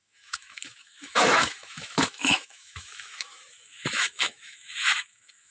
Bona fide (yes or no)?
no